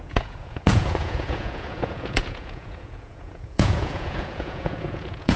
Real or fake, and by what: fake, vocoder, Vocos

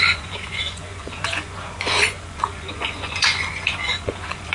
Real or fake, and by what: fake, vocoder, Vocos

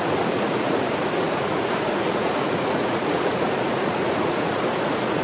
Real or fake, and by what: fake, vocoder, Vocos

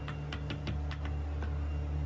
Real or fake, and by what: real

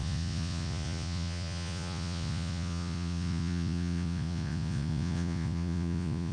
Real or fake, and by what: fake, vocoder, Vocos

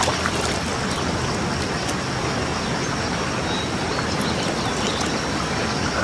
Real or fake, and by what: real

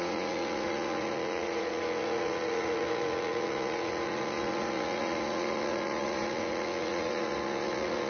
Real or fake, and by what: fake, vocoder, Vocos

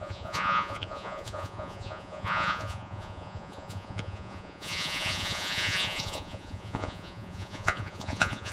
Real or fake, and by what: fake, vocoder, Vocos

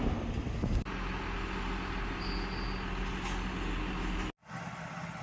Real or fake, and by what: real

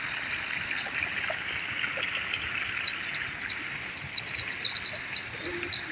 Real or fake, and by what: real